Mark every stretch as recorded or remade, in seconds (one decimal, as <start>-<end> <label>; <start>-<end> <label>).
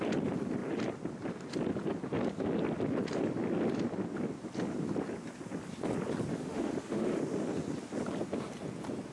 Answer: 0.0-6.3 recorded; 6.3-7.2 remade; 7.2-9.1 recorded